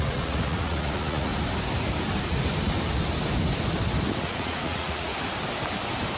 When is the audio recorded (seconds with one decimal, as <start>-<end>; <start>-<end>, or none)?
1.3-4.2; 5.1-6.2